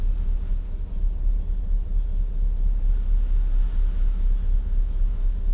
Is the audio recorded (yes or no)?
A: yes